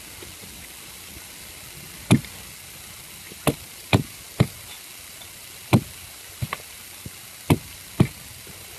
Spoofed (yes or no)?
no